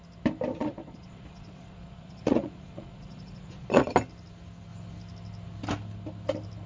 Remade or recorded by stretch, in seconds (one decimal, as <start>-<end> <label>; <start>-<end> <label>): 0.0-0.6 recorded; 0.6-3.9 remade; 3.9-6.7 recorded